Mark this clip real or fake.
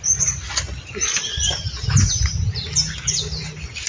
real